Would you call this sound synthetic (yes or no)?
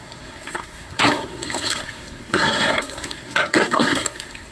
yes